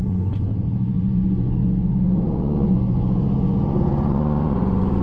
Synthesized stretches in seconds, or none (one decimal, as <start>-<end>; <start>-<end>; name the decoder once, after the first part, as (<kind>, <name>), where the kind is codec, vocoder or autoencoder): 0.0-5.0 (vocoder, Vocos)